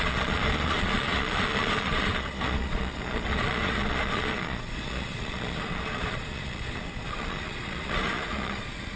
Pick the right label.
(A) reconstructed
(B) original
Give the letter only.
A